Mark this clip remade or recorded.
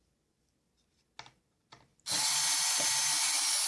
recorded